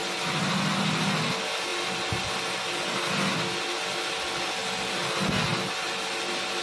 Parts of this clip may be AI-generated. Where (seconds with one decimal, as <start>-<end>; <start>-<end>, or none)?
none